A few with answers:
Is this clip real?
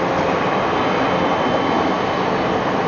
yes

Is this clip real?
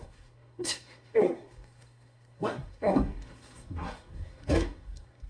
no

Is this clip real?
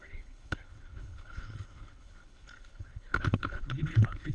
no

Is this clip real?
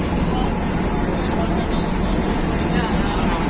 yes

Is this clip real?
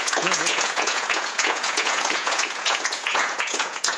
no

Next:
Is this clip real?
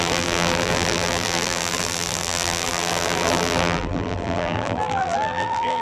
no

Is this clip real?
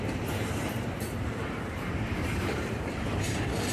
no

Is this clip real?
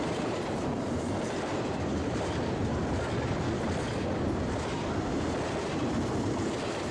no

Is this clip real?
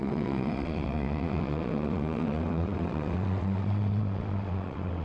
no